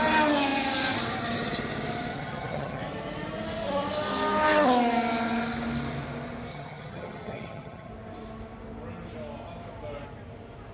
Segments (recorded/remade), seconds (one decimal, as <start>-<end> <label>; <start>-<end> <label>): 0.0-2.1 recorded; 2.1-2.8 remade; 2.8-6.5 recorded; 6.5-7.9 remade; 7.9-10.7 recorded